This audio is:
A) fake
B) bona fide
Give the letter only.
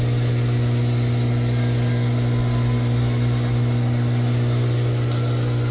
B